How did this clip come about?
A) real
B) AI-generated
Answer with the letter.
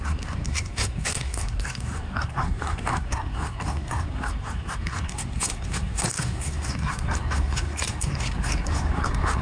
B